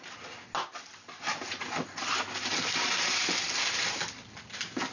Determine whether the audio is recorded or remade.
recorded